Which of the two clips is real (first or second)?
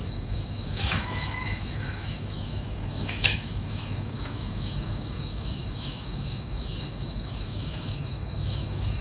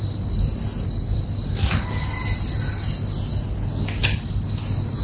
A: second